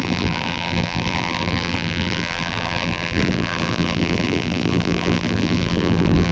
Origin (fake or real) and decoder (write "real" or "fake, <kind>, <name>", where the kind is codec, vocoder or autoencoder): fake, vocoder, BigVGAN v2